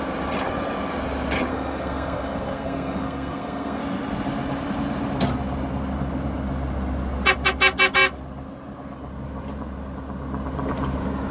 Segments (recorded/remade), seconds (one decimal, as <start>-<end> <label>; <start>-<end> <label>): 0.0-1.5 recorded; 1.5-3.8 remade; 3.8-11.3 recorded